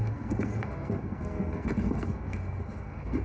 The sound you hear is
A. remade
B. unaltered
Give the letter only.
A